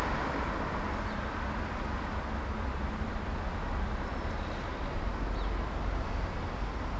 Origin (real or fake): real